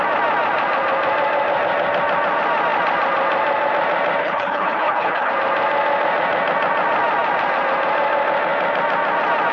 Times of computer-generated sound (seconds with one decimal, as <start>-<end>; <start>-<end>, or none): 4.2-5.3